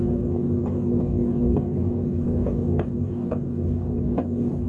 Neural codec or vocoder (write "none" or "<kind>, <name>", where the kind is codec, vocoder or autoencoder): codec, DAC